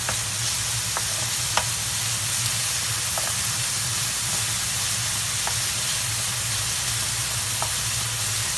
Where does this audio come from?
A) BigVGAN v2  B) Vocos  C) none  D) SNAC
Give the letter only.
C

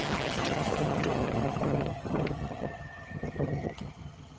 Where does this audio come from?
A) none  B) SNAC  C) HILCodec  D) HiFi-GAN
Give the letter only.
D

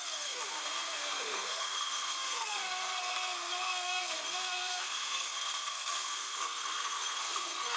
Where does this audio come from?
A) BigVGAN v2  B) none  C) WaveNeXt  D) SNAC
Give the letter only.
D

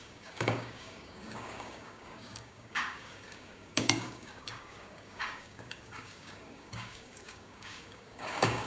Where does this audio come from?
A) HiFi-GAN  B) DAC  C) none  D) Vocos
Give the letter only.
B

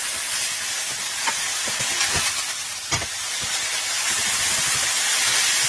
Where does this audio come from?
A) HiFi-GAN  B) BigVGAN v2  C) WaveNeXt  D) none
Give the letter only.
D